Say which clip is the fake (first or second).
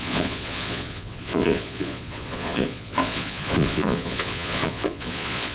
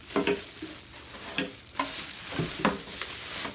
first